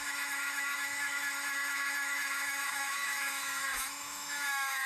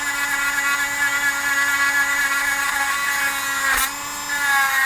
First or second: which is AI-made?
first